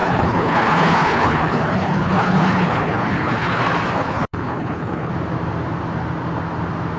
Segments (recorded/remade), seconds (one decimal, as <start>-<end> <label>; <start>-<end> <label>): 0.0-3.6 remade; 3.6-4.0 recorded; 4.0-5.1 remade; 5.1-7.0 recorded